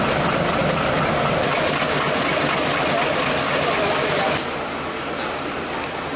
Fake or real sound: real